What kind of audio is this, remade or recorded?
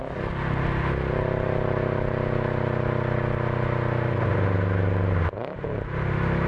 recorded